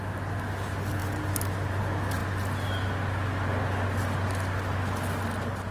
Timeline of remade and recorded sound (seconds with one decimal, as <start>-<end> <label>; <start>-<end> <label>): 0.0-5.7 recorded